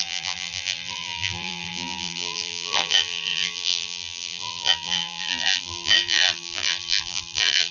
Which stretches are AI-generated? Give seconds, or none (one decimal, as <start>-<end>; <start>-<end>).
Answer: 0.0-7.7